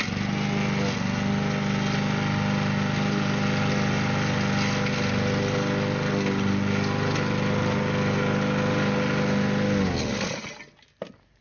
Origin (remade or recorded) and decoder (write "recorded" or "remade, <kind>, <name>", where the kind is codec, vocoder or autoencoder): recorded